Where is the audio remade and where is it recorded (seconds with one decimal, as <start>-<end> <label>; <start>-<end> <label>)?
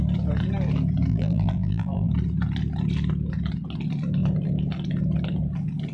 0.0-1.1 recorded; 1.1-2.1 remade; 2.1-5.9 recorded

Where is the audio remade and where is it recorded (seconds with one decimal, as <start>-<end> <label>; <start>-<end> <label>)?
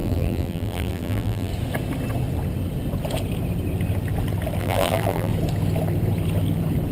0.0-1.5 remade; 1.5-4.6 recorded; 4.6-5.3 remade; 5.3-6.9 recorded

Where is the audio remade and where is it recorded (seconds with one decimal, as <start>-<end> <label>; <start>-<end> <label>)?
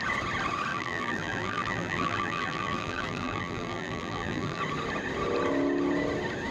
0.0-0.7 recorded; 0.7-4.6 remade; 4.6-6.5 recorded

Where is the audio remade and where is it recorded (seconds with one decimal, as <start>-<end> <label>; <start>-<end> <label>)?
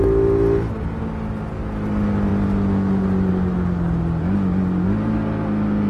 0.0-5.9 recorded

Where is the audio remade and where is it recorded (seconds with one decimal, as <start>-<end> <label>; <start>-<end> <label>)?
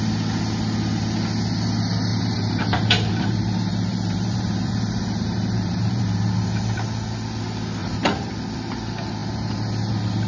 0.0-2.1 recorded; 2.1-6.3 remade; 6.3-7.8 recorded; 7.8-8.3 remade; 8.3-10.3 recorded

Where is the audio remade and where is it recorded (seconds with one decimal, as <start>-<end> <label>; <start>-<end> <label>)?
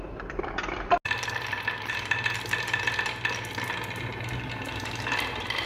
0.0-0.6 remade; 0.6-4.0 recorded; 4.0-5.7 remade